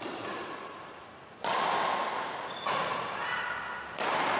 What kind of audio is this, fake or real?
real